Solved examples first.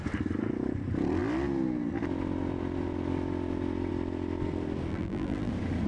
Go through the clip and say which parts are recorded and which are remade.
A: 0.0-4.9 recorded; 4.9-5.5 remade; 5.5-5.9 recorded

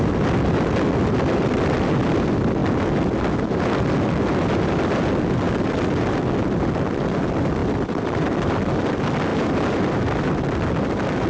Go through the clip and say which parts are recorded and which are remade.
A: 0.0-7.6 recorded; 7.6-8.5 remade; 8.5-9.3 recorded; 9.3-10.0 remade; 10.0-11.3 recorded

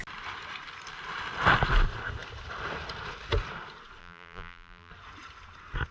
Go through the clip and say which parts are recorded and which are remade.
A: 0.0-4.0 recorded; 4.0-4.9 remade; 4.9-5.9 recorded

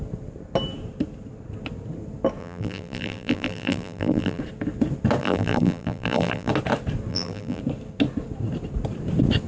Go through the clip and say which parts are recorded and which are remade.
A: 0.0-2.4 recorded; 2.4-4.4 remade; 4.4-5.2 recorded; 5.2-6.5 remade; 6.5-7.1 recorded; 7.1-7.6 remade; 7.6-9.5 recorded

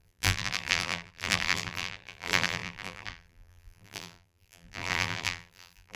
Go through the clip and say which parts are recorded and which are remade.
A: 0.0-6.0 remade